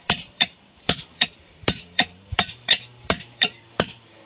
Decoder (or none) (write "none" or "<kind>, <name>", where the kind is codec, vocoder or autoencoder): vocoder, BigVGAN v2